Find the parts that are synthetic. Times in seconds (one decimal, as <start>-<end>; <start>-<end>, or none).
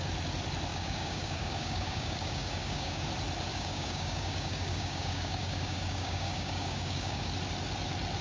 0.7-3.1; 3.5-7.3